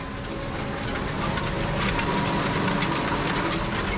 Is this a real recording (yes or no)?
yes